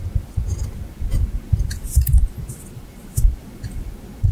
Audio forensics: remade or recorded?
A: recorded